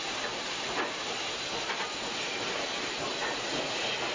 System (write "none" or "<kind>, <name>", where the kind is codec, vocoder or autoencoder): none